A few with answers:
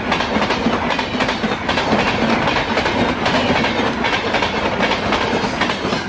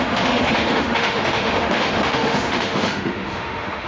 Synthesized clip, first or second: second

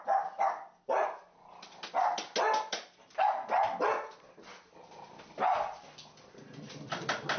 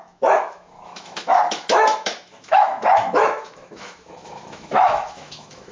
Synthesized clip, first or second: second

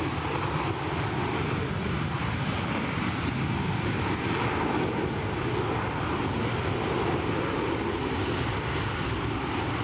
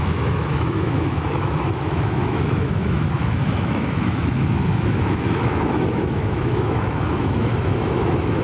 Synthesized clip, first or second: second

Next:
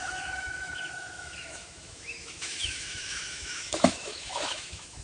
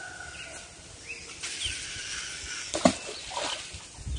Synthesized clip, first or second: first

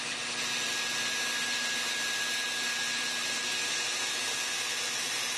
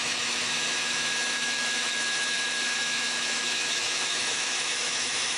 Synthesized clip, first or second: second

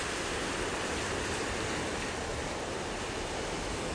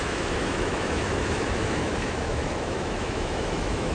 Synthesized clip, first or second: second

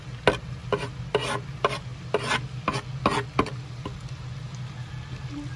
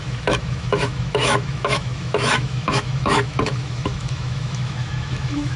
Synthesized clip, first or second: second